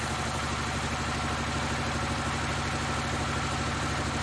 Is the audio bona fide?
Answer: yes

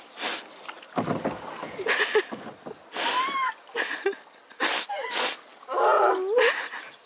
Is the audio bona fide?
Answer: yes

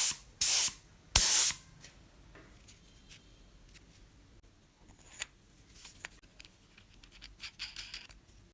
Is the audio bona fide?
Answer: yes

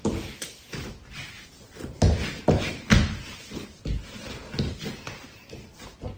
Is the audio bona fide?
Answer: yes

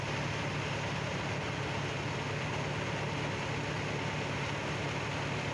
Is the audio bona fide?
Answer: yes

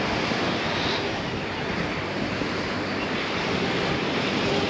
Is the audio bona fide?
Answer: yes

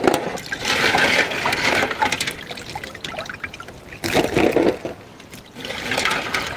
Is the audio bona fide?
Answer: yes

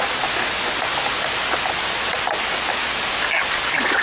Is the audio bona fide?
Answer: yes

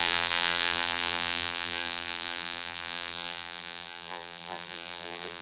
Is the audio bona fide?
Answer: no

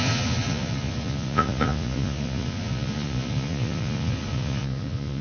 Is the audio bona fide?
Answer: no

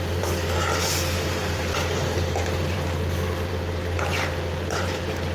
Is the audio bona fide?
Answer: no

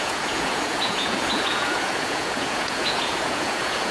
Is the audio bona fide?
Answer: no